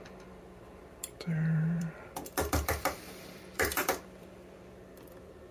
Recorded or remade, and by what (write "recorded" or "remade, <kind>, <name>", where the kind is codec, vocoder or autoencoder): remade, vocoder, BigVGAN v2